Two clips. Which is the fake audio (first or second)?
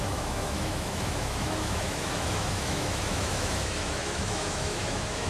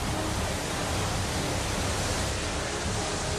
first